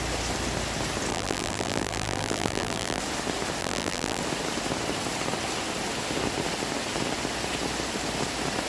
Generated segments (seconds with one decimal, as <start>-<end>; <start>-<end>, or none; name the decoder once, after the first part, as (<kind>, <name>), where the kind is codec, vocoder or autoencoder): 1.1-3.0 (vocoder, BigVGAN v2); 3.6-4.2